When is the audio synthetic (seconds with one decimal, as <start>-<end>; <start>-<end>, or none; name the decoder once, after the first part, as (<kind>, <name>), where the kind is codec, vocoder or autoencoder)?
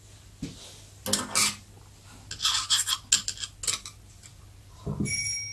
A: none